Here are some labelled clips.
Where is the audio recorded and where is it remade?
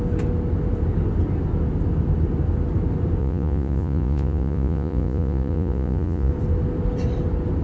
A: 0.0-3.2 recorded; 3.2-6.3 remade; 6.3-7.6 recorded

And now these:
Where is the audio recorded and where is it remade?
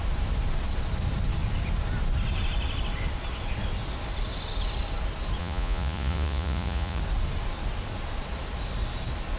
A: 0.0-5.4 recorded; 5.4-7.0 remade; 7.0-9.4 recorded